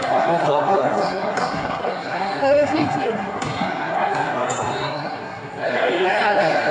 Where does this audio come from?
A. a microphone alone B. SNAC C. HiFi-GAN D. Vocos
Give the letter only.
B